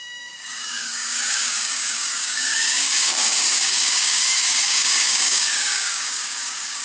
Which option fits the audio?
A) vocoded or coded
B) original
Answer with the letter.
A